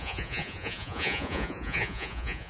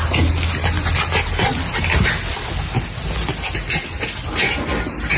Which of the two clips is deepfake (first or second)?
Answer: first